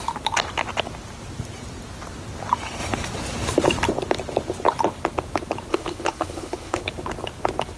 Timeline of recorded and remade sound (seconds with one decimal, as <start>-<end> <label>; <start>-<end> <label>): 0.0-5.7 recorded; 5.7-6.8 remade; 6.8-7.8 recorded